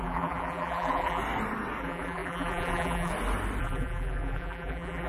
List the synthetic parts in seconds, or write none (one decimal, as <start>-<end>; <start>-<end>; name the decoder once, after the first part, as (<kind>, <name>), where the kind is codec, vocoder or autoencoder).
0.0-1.2 (vocoder, BigVGAN v2); 1.8-3.1; 3.6-5.1